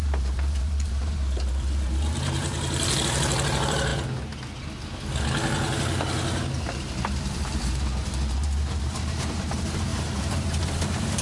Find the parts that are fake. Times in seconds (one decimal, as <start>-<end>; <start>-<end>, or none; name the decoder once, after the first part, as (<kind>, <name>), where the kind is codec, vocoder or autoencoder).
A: 0.0-3.9 (vocoder, BigVGAN v2); 6.6-11.2